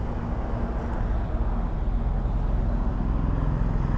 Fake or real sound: real